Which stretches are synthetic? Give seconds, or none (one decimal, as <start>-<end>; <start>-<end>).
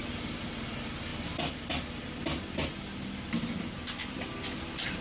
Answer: none